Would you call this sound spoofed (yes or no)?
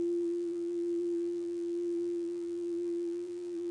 yes